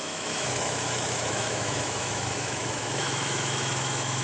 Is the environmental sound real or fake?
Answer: fake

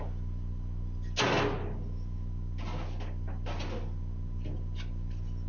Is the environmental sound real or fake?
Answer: real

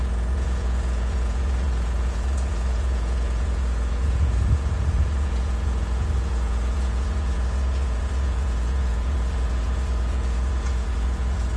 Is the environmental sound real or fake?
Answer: fake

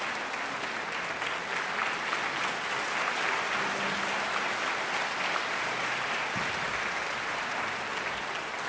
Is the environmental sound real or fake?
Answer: real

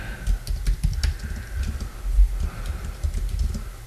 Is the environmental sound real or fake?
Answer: real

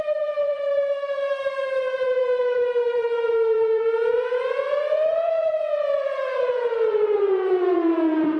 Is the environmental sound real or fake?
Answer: fake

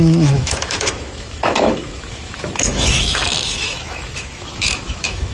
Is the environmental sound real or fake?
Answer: fake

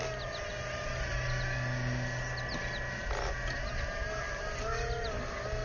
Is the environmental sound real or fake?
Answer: real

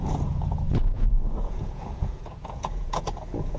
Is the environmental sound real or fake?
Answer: fake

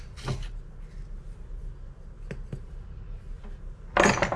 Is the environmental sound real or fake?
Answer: real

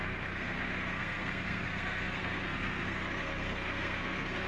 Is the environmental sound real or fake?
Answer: fake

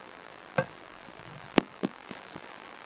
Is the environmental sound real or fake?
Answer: fake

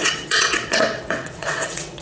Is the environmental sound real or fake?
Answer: fake